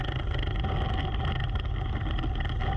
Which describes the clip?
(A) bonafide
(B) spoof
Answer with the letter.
A